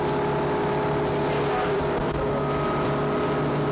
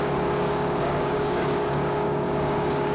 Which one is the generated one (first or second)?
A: second